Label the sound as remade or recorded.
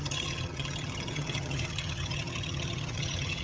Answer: remade